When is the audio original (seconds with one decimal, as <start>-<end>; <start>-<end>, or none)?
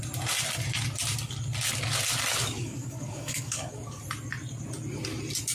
0.0-2.6; 4.0-5.5